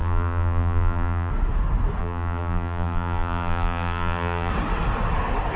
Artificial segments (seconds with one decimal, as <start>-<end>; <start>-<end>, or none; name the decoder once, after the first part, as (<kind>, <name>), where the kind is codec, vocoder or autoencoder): 0.0-1.3 (vocoder, BigVGAN v2); 2.0-4.5